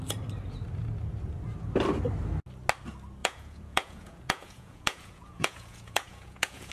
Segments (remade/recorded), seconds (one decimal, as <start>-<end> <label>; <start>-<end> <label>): 0.0-3.2 recorded; 3.2-6.7 remade